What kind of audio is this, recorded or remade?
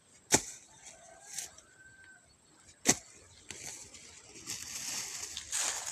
recorded